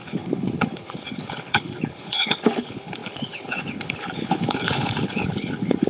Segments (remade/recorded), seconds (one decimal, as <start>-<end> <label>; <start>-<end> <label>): 0.0-5.9 remade

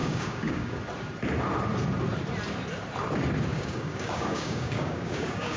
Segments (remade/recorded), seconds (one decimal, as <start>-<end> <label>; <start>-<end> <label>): 0.0-0.8 remade; 0.8-3.5 recorded; 3.5-5.6 remade

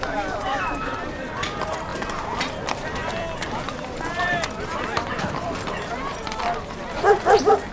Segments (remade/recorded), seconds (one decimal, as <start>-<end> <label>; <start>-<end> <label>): 0.0-1.9 remade; 1.9-2.4 recorded; 2.4-7.7 remade

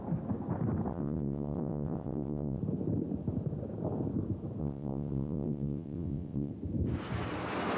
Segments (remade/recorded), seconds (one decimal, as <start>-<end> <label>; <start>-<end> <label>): 0.0-0.9 recorded; 0.9-2.6 remade; 2.6-4.6 recorded; 4.6-6.5 remade; 6.5-7.8 recorded

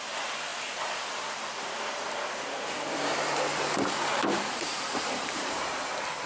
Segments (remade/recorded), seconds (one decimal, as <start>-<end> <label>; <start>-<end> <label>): 0.0-4.1 recorded; 4.1-5.8 remade; 5.8-6.3 recorded